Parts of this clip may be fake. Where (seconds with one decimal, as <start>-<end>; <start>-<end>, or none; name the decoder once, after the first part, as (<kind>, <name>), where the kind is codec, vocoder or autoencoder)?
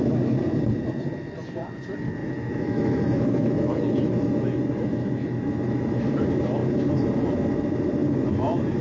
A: 2.2-6.0 (autoencoder, DAC-VAE)